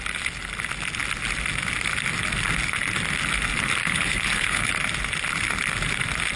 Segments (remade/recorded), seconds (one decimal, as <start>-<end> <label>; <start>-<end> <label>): 0.0-3.8 recorded; 3.8-4.7 remade; 4.7-6.4 recorded